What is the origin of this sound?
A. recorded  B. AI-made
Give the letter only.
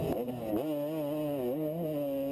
A